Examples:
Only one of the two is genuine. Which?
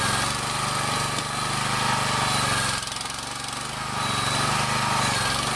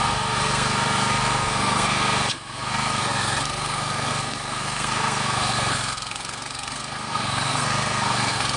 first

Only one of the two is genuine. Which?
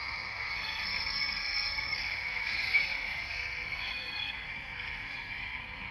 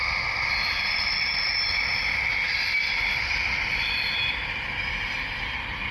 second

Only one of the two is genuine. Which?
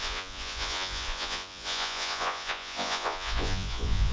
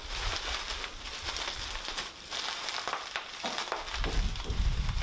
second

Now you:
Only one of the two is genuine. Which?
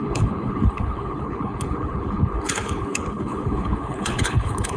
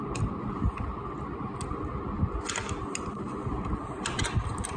second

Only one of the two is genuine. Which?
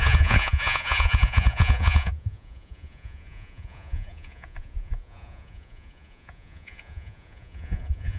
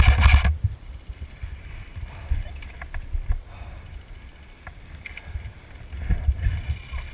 second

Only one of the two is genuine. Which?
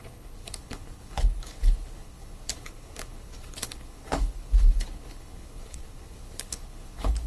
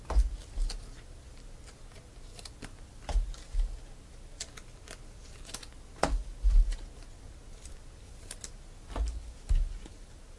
second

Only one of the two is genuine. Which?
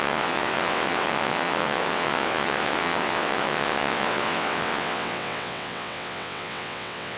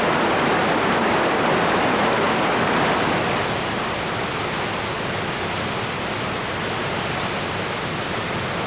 second